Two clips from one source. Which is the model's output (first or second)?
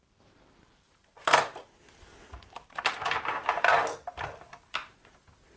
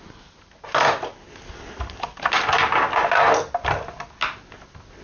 first